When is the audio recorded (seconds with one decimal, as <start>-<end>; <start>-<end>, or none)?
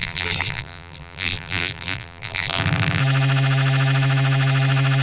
3.0-5.0